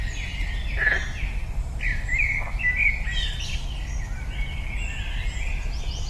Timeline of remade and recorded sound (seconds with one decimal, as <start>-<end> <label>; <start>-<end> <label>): 0.0-1.9 recorded; 1.9-2.6 remade; 2.6-6.1 recorded